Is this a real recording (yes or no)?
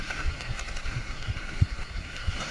no